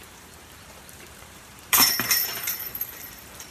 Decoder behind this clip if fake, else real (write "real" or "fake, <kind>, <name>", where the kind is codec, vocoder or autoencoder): fake, vocoder, BigVGAN v2